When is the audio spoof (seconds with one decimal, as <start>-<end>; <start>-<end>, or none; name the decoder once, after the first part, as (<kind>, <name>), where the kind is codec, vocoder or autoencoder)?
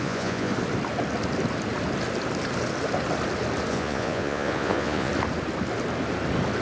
0.0-0.5 (vocoder, Vocos); 3.7-5.1